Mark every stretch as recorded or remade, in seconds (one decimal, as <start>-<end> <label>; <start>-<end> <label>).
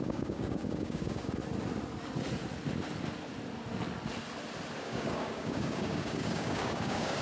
0.0-1.4 remade; 1.4-4.8 recorded; 4.8-7.2 remade